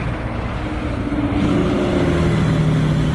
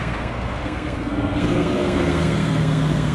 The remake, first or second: second